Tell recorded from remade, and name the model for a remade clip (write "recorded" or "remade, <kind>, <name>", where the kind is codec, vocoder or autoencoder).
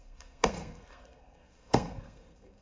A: remade, codec, SNAC